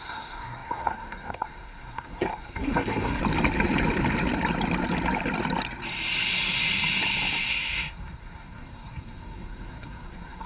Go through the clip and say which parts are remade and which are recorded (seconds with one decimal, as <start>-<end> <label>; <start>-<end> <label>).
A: 0.0-3.2 remade; 3.2-7.5 recorded; 7.5-10.5 remade